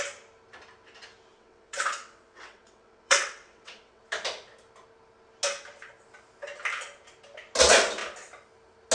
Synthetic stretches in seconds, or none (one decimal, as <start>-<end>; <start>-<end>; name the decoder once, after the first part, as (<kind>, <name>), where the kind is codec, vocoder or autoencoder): 1.3-4.0 (vocoder, WaveNeXt)